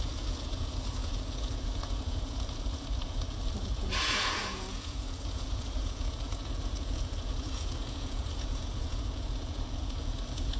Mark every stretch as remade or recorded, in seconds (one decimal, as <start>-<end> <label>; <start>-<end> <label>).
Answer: 0.0-10.6 remade